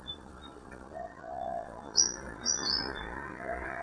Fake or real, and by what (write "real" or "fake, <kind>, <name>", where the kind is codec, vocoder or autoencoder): fake, vocoder, Vocos